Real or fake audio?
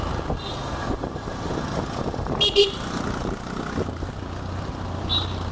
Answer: real